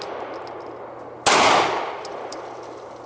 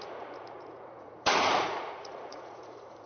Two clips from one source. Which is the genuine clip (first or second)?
first